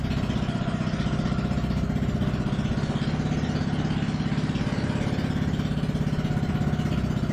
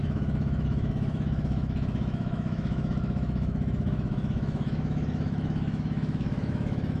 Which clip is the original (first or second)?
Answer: first